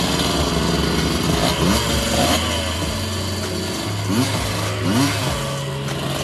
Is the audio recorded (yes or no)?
yes